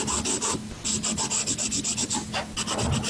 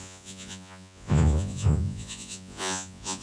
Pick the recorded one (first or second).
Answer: first